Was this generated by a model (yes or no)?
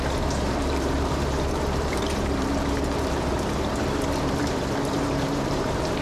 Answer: yes